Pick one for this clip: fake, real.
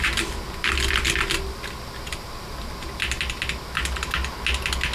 real